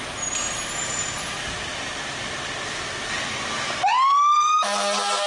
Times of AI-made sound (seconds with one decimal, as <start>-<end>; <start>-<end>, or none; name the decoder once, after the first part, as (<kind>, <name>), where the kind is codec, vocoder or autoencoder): none